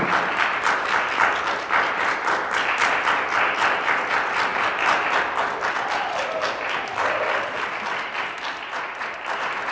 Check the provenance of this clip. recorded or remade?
recorded